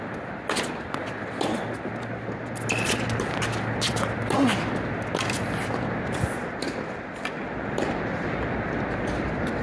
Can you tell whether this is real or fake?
real